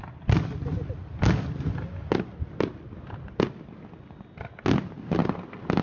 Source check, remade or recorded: recorded